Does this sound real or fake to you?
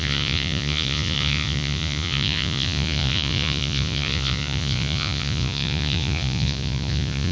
fake